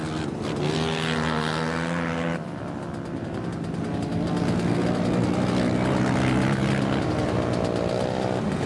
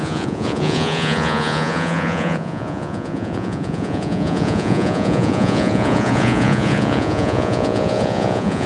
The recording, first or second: first